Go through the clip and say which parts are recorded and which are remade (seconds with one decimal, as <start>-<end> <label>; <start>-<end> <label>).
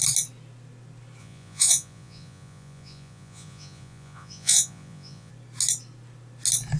0.0-1.2 recorded; 1.2-5.3 remade; 5.3-6.8 recorded